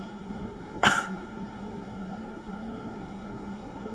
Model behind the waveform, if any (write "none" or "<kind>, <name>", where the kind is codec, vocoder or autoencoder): codec, SNAC